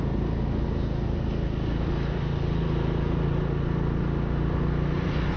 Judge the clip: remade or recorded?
recorded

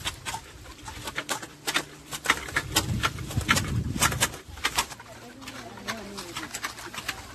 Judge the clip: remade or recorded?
recorded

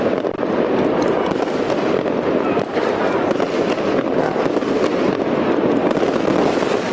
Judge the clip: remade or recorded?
recorded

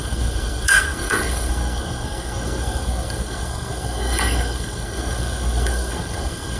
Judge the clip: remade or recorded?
remade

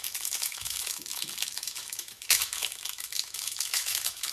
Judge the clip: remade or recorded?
remade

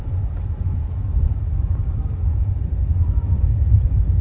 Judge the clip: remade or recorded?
remade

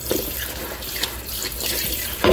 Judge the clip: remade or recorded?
remade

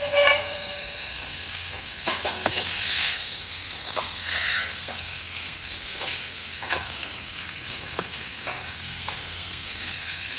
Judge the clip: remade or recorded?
remade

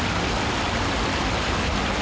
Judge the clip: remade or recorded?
remade